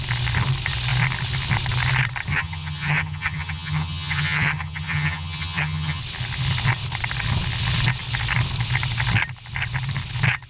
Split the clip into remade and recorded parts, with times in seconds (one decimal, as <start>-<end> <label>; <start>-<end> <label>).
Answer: 0.0-2.3 recorded; 2.3-6.0 remade; 6.0-10.5 recorded

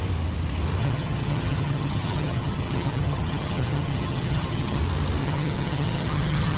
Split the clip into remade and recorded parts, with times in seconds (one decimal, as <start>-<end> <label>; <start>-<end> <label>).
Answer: 0.0-0.8 recorded; 0.8-4.8 remade; 4.8-5.2 recorded; 5.2-6.6 remade

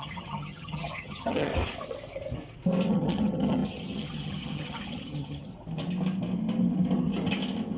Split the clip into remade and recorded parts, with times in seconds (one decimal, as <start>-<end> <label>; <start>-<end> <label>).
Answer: 0.0-1.5 remade; 1.5-2.9 recorded; 2.9-5.5 remade; 5.5-7.8 recorded

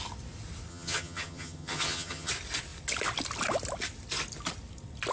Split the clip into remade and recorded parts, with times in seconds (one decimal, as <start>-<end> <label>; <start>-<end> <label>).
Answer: 0.0-0.7 recorded; 0.7-2.3 remade; 2.3-5.1 recorded

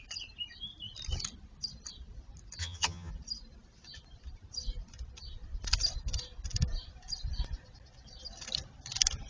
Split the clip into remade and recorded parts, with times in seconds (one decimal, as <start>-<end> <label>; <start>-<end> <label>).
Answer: 0.0-2.6 recorded; 2.6-3.1 remade; 3.1-9.3 recorded

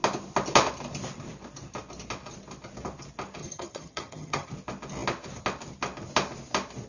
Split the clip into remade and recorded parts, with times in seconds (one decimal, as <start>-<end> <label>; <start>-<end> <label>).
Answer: 0.0-3.4 recorded; 3.4-4.5 remade; 4.5-6.9 recorded

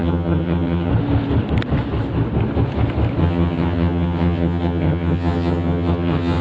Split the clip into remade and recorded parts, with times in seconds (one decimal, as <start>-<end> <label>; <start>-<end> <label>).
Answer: 0.0-0.9 remade; 0.9-3.2 recorded; 3.2-6.4 remade